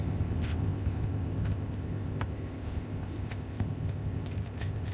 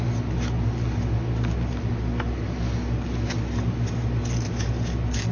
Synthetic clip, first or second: first